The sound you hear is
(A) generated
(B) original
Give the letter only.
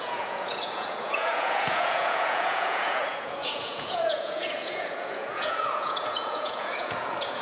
A